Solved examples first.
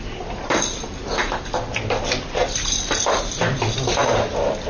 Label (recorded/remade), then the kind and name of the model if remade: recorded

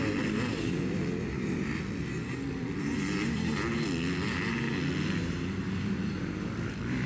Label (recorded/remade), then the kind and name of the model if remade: recorded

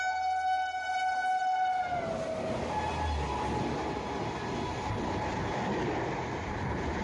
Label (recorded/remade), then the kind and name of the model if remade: recorded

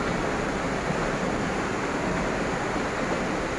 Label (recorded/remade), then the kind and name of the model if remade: recorded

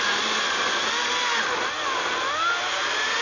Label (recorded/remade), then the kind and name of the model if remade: recorded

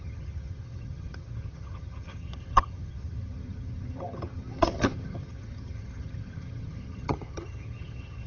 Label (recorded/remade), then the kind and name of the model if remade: remade, vocoder, HiFi-GAN